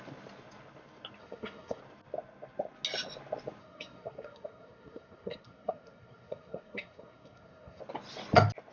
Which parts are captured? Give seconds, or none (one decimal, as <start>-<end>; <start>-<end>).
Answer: 0.0-1.2; 1.8-3.6; 7.8-8.7